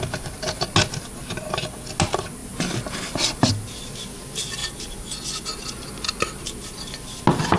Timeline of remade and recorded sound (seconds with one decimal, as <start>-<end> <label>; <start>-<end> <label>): 0.0-2.4 recorded; 2.4-3.5 remade; 3.5-7.6 recorded

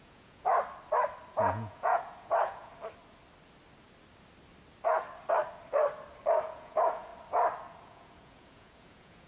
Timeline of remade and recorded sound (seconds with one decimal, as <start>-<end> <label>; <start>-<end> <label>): 0.0-0.5 remade; 0.5-1.3 recorded; 1.3-2.7 remade; 2.7-6.4 recorded; 6.4-7.1 remade; 7.1-7.8 recorded; 7.8-9.3 remade